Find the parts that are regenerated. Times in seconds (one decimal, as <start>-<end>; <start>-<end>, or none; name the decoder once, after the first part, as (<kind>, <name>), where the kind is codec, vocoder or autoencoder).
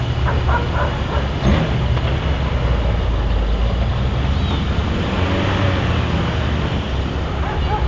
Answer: none